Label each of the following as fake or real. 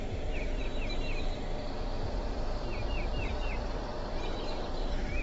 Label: fake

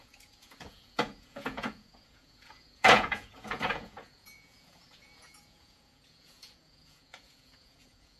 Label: fake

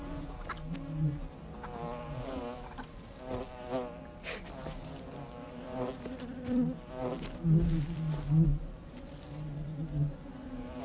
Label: real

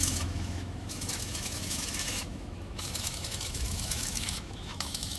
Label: fake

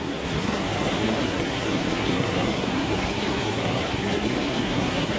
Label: fake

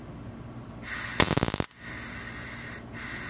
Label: real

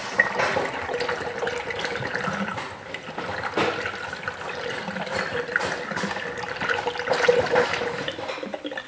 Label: real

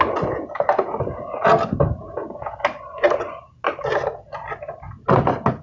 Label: real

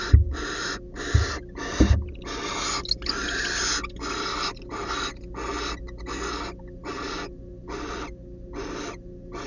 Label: real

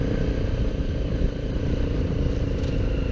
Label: real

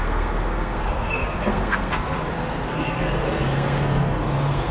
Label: fake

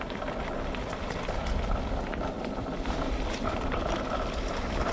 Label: fake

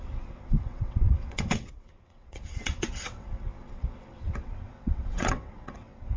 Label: fake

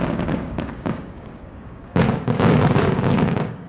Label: fake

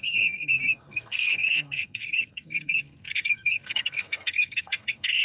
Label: fake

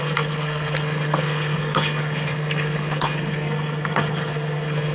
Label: fake